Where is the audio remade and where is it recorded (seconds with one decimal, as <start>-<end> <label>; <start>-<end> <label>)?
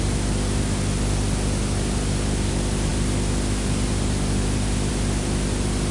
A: 0.0-5.9 recorded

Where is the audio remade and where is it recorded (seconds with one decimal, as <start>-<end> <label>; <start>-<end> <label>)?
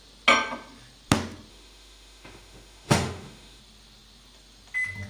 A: 0.0-1.5 recorded; 1.5-3.6 remade; 3.6-5.1 recorded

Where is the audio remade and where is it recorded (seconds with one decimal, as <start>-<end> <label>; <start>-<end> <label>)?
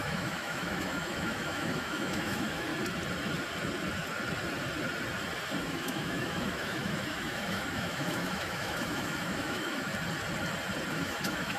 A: 0.0-2.7 remade; 2.7-5.6 recorded; 5.6-9.9 remade; 9.9-10.9 recorded; 10.9-11.6 remade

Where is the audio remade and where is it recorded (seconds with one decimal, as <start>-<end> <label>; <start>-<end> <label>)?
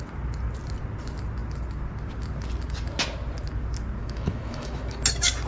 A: 0.0-4.0 recorded; 4.0-4.8 remade; 4.8-5.5 recorded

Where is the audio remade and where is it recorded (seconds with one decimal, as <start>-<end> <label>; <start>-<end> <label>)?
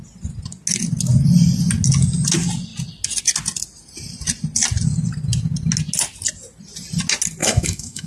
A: 0.0-7.4 recorded; 7.4-8.1 remade